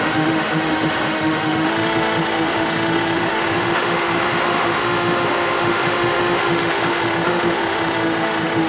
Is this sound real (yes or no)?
no